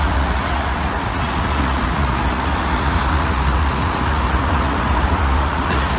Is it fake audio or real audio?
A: fake